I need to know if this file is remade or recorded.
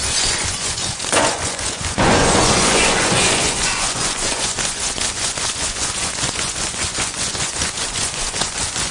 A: remade